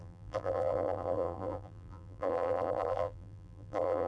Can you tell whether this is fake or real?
fake